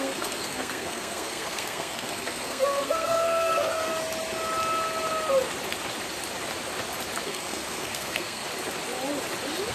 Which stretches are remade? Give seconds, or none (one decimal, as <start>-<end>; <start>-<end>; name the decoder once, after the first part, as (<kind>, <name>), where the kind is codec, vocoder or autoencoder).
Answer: 0.0-3.9 (codec, SNAC); 7.2-8.4

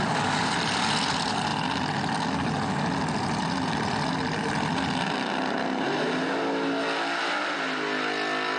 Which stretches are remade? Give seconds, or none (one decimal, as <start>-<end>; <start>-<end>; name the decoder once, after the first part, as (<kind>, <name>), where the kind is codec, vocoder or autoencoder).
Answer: none

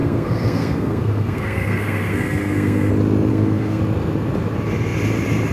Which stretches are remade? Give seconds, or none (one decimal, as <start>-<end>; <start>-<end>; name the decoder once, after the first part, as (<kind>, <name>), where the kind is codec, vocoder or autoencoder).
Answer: 0.0-2.9 (codec, SNAC); 3.3-3.8

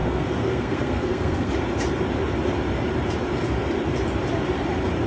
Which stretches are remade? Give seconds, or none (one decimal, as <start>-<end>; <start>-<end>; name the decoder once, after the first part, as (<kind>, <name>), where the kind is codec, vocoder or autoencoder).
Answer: 0.0-1.5 (codec, SNAC)

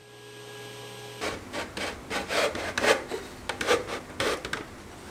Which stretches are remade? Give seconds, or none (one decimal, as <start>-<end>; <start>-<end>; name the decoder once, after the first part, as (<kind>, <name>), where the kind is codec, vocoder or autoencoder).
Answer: none

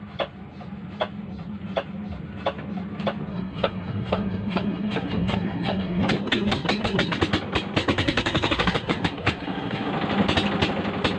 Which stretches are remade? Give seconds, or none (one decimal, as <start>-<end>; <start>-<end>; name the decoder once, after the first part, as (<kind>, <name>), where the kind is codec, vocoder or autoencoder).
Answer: 3.3-7.2 (codec, SNAC); 7.8-9.9

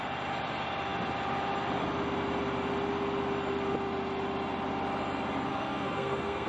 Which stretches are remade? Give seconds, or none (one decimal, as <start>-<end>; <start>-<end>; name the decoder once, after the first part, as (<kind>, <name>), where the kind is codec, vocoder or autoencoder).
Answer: 5.5-6.5 (codec, SNAC)

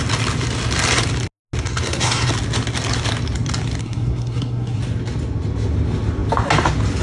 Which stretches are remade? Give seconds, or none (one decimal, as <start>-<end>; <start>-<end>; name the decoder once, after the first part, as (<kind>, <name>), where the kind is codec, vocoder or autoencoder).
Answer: 1.6-2.3 (codec, SNAC); 3.8-4.8